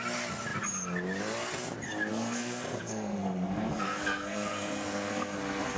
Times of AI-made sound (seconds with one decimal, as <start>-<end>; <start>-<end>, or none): 2.1-5.8